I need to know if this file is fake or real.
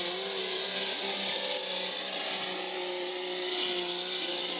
real